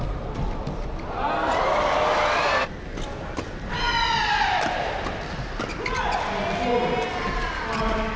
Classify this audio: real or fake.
real